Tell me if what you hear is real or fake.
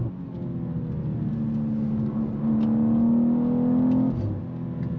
real